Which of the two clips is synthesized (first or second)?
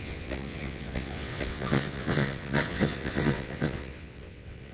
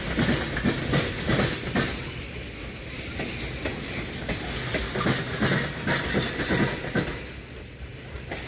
first